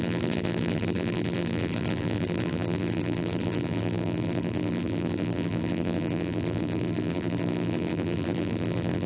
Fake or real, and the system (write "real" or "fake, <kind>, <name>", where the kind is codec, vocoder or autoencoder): fake, vocoder, BigVGAN v2